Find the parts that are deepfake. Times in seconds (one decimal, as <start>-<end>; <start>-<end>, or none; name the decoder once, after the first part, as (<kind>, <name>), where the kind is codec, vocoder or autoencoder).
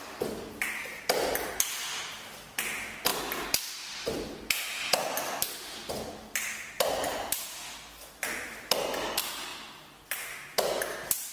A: none